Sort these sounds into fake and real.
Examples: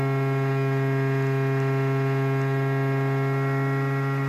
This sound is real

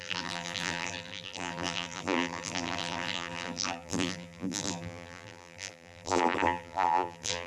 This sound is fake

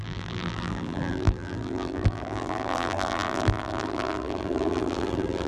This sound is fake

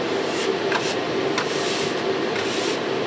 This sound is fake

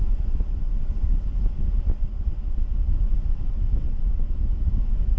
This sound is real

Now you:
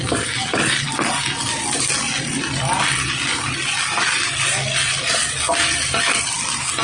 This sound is real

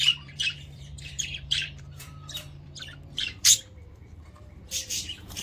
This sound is fake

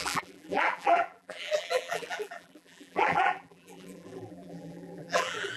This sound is fake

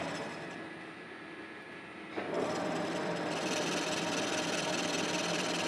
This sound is fake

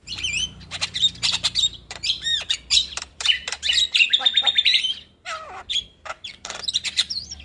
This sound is fake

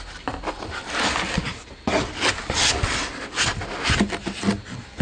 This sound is real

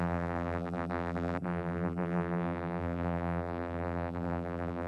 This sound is fake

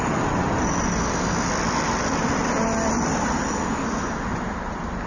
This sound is real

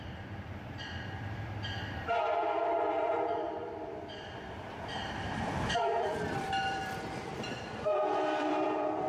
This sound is fake